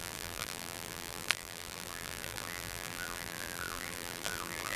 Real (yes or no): no